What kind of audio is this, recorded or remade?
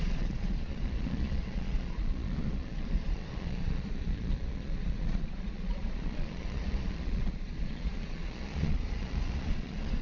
remade